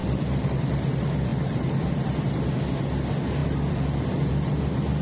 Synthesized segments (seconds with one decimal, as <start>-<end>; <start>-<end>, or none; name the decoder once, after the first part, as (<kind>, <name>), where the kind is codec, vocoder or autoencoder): 0.0-0.7 (vocoder, BigVGAN v2); 1.3-2.2; 3.4-4.3